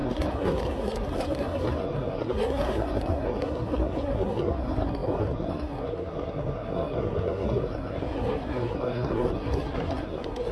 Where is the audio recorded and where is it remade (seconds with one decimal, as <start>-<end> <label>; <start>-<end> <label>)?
0.0-10.5 remade